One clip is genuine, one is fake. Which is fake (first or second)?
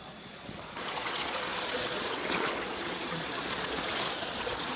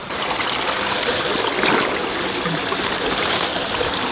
first